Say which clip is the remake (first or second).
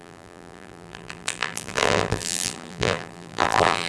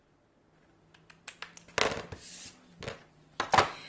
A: first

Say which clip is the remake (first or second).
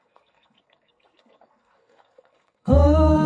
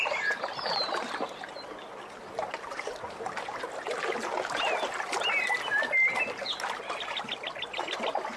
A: first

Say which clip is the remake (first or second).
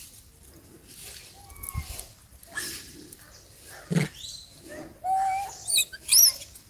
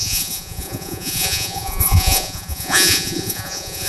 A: second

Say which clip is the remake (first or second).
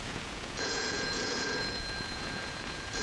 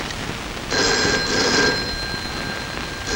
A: first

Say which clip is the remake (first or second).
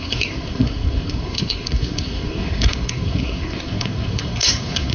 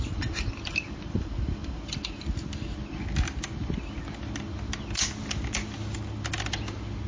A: first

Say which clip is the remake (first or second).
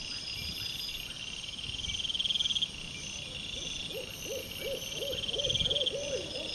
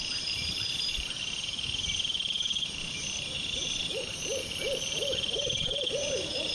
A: second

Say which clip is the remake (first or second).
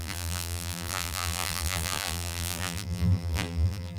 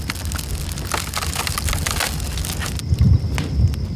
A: first